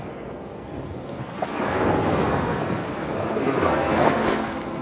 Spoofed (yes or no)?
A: yes